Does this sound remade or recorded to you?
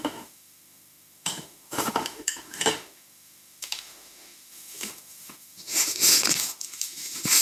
remade